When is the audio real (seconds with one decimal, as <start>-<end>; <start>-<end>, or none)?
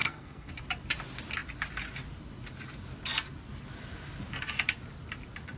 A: 0.5-5.6